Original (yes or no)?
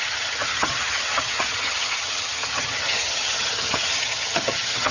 no